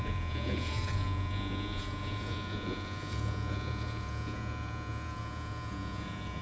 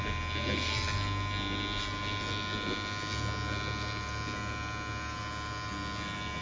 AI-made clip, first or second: first